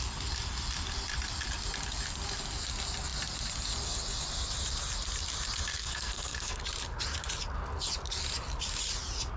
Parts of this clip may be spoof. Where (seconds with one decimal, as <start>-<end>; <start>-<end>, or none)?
5.7-6.6